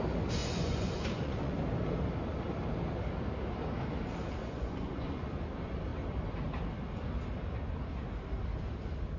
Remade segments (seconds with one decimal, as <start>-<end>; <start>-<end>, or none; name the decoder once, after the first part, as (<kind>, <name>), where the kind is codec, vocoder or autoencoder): 0.4-1.6 (vocoder, Vocos); 4.4-5.3